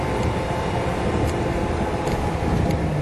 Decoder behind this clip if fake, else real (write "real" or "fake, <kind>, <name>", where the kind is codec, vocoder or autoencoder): real